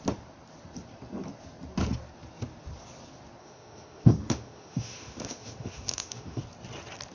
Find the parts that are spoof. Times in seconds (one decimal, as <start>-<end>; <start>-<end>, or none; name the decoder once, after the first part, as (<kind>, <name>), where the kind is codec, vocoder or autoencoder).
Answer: 3.4-6.4 (autoencoder, DAC-VAE)